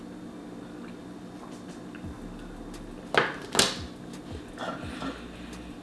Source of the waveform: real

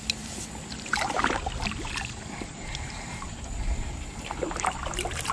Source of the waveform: real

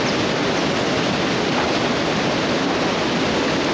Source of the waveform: real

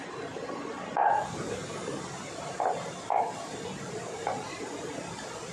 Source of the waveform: real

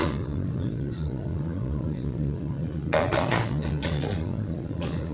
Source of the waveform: fake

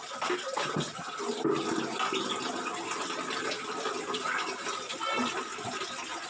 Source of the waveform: real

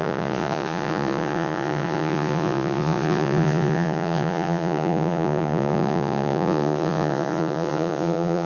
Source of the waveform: fake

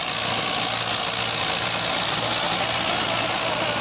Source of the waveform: real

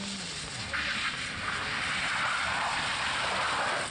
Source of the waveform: real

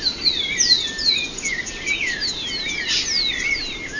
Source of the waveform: real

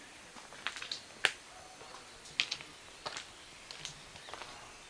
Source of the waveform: real